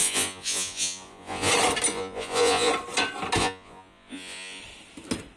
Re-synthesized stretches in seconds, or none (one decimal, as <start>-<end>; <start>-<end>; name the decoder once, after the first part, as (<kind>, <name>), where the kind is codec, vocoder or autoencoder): 0.0-1.5 (vocoder, Vocos); 1.9-2.7; 3.4-4.6